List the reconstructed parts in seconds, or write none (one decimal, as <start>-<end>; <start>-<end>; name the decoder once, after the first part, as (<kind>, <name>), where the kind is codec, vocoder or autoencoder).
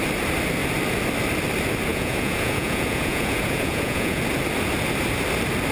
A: 1.9-4.2 (vocoder, Vocos)